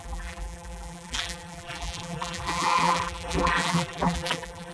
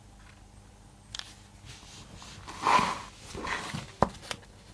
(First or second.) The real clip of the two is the second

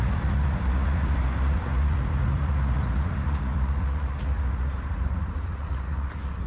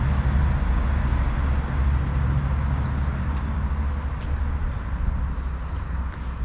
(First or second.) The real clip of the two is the second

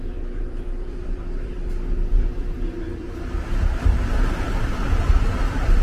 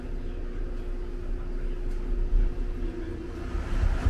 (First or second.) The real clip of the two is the second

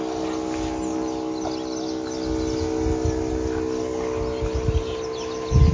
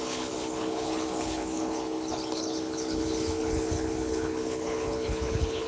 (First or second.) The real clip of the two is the first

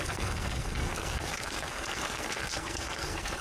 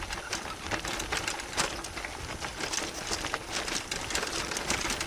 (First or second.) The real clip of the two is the second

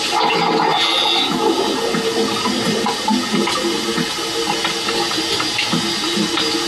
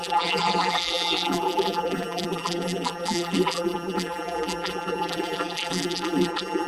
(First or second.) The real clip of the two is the first